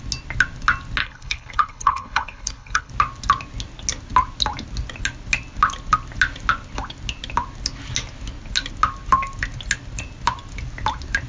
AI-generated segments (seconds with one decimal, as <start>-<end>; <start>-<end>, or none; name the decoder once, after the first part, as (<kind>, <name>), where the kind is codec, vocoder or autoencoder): 1.0-2.9 (codec, HILCodec)